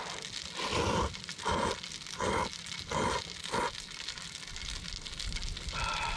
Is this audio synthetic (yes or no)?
no